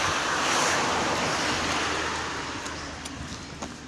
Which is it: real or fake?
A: real